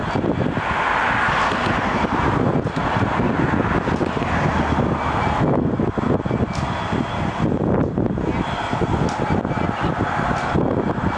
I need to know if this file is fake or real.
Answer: real